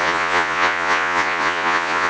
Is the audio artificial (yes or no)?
yes